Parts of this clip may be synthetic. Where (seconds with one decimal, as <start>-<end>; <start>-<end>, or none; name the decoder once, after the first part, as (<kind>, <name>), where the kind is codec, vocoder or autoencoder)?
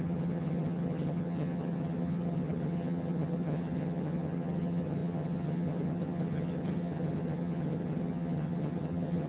0.0-9.3 (vocoder, HiFi-GAN)